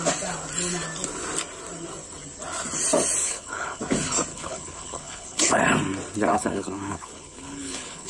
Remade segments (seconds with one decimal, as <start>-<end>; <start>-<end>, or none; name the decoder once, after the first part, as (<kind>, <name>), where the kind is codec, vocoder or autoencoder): 3.2-3.8 (codec, HILCodec); 4.3-5.6; 6.3-8.1